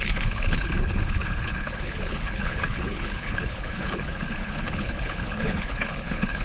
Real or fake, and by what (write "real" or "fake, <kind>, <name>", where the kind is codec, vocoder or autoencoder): fake, codec, HILCodec